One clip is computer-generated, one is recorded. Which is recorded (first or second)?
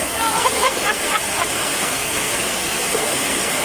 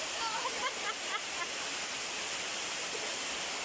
second